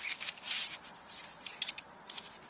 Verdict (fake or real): real